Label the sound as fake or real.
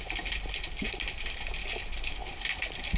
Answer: real